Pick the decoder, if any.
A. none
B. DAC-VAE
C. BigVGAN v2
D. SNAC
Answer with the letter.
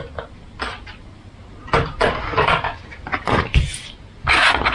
A